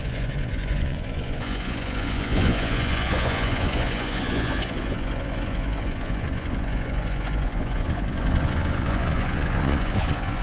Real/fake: fake